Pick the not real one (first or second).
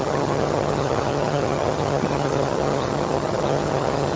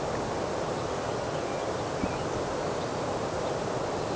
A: first